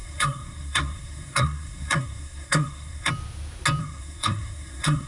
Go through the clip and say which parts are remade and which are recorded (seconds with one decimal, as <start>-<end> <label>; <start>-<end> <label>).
0.0-3.1 remade; 3.1-3.8 recorded; 3.8-5.1 remade